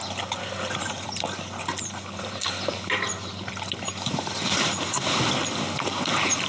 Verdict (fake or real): real